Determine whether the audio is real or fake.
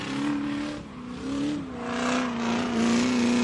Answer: real